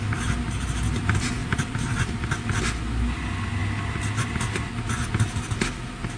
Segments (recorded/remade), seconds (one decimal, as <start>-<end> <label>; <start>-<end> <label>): 0.0-6.2 recorded